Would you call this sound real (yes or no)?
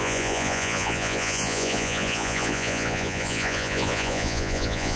no